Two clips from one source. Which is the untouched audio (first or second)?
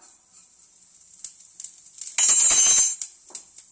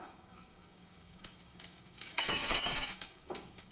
first